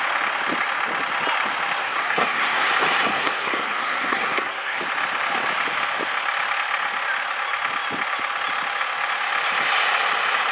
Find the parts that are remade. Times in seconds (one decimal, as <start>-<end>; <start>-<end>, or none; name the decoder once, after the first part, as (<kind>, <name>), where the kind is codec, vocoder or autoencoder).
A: 1.8-2.7 (codec, SNAC); 3.1-4.8